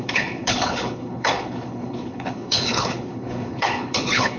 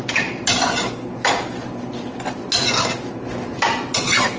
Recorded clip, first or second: second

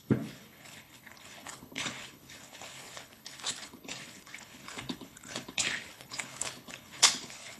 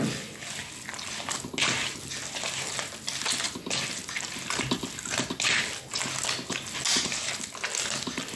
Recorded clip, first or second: second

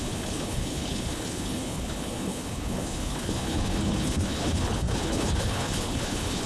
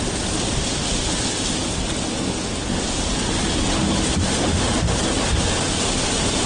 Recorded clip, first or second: second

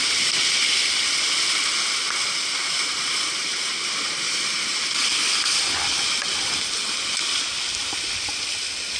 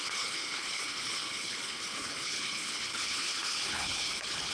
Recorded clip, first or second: first